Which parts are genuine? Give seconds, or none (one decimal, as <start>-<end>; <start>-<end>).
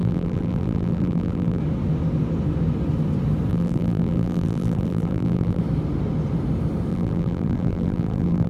1.6-3.5; 5.6-6.9